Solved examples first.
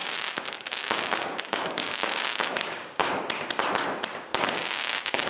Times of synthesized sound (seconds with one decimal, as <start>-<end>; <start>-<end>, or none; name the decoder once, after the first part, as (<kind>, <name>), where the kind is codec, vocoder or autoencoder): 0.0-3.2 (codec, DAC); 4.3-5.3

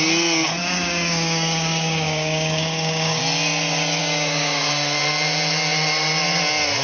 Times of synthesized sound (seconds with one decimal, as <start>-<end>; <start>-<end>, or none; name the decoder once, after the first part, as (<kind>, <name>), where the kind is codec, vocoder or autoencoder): 0.6-3.2 (codec, DAC); 4.0-4.7

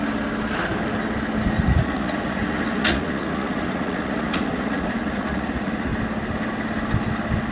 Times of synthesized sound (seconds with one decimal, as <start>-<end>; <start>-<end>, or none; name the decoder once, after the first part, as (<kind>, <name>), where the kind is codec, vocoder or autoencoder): 1.6-5.9 (vocoder, Vocos)

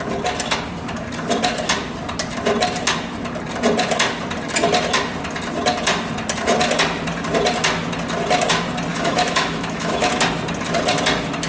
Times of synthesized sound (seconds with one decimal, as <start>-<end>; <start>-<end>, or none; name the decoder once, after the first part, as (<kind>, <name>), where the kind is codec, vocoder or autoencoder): 8.9-10.1 (autoencoder, DAC-VAE)

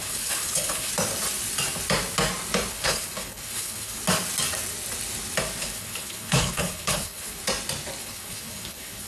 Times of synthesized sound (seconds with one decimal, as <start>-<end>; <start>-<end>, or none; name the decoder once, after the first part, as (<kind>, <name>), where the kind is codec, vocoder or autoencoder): 0.0-0.9 (codec, HILCodec); 2.7-4.0; 5.6-7.4; 8.0-9.1